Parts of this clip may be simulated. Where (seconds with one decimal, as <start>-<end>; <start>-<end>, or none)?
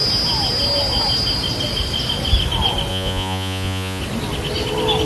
2.9-4.0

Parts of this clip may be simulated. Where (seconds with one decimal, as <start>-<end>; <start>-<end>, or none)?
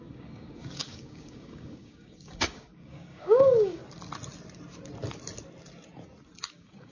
0.0-3.8; 6.5-6.9